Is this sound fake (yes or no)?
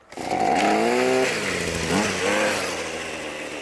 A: no